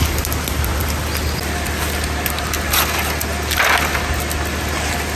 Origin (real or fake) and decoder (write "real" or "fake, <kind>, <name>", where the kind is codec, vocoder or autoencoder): real